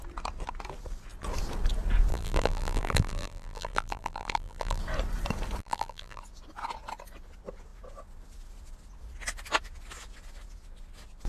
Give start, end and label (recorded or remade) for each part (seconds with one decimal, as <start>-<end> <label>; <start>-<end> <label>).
0.0-2.1 recorded; 2.1-4.8 remade; 4.8-5.6 recorded; 5.6-6.2 remade; 6.2-11.3 recorded